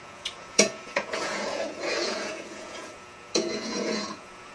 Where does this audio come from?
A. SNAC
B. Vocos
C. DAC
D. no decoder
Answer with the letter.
B